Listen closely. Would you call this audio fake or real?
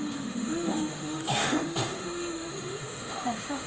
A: fake